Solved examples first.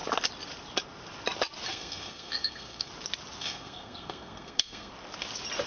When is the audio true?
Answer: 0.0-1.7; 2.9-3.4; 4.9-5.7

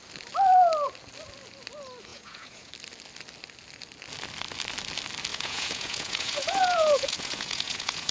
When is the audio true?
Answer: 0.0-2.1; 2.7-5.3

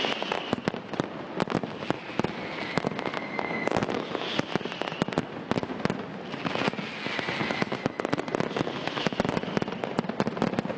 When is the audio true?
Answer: 0.0-10.8

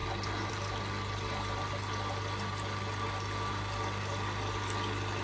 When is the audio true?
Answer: 0.0-5.2